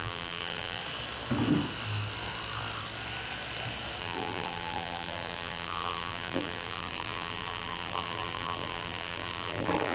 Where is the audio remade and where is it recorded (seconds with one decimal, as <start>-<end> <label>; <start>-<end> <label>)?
0.0-0.8 remade; 0.8-4.0 recorded; 4.0-9.9 remade